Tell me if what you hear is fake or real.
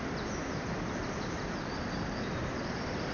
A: fake